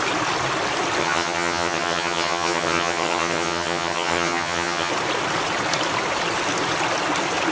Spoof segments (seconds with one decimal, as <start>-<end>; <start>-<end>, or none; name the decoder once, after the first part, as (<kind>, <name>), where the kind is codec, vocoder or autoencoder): 1.0-4.9 (vocoder, HiFi-GAN)